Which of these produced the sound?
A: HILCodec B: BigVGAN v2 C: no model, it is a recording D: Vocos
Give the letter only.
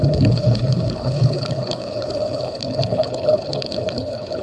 A